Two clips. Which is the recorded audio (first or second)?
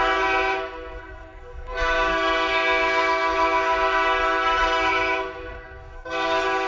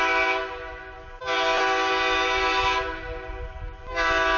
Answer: second